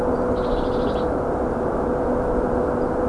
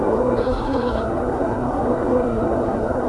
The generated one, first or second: second